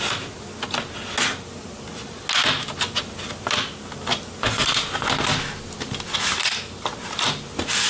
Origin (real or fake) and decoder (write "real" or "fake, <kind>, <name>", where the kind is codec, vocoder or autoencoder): real